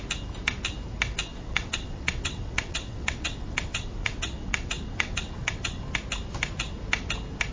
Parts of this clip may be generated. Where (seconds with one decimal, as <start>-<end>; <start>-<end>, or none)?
1.3-5.8